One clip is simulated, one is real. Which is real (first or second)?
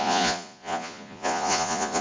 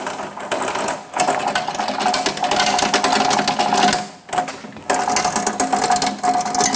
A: second